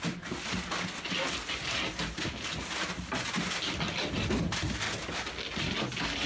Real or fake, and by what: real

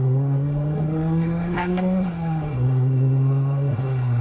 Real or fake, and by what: fake, codec, SNAC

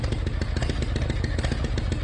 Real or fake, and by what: real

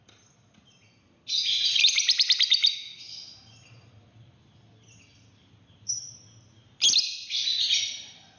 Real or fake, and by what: real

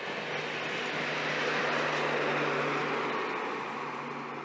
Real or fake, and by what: real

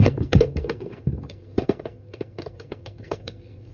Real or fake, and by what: fake, codec, SNAC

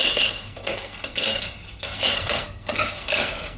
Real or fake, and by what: fake, codec, SNAC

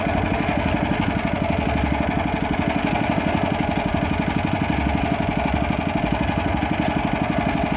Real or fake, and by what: real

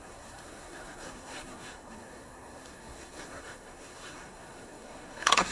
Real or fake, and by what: fake, codec, SNAC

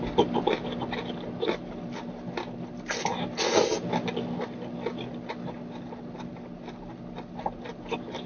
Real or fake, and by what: real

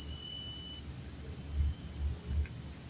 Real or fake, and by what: real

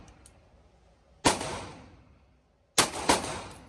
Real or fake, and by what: real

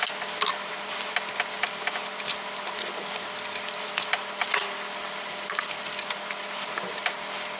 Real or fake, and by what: real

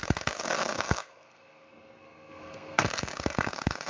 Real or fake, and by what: fake, codec, SNAC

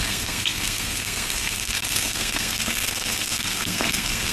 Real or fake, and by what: fake, codec, SNAC